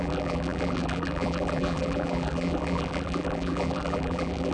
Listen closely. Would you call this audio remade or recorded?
remade